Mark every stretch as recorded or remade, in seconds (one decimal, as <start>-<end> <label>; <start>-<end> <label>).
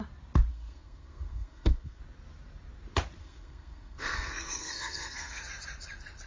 0.0-0.5 recorded; 0.5-2.0 remade; 2.0-3.2 recorded; 3.2-5.4 remade; 5.4-6.3 recorded